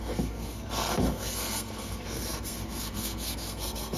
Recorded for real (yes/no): no